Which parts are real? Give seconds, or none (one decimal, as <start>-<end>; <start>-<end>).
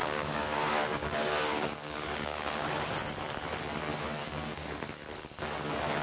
2.9-4.2; 4.8-6.0